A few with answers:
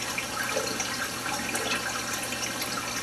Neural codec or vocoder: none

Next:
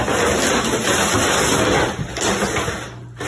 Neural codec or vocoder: none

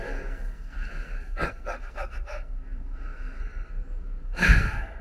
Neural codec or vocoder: codec, SNAC